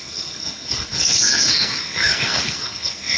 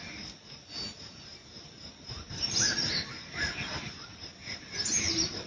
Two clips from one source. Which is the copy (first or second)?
first